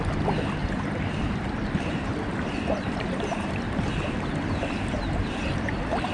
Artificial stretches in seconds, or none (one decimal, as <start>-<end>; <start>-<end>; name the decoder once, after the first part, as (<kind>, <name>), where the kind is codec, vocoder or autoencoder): 0.6-4.3 (vocoder, BigVGAN v2)